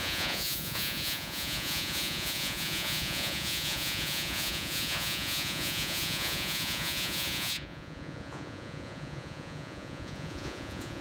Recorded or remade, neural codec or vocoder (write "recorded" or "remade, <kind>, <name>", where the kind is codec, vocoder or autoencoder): remade, vocoder, Vocos